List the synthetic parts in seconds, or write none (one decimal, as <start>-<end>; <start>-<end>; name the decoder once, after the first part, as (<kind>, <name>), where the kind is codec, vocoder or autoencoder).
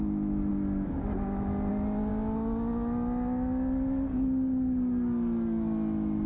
none